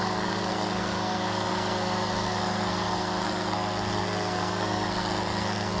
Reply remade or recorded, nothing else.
remade